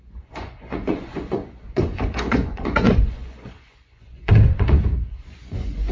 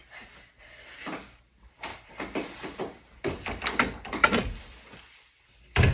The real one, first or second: second